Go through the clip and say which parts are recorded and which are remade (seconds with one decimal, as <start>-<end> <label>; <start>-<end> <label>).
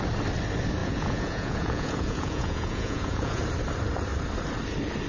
0.0-0.8 recorded; 0.8-3.4 remade; 3.4-5.1 recorded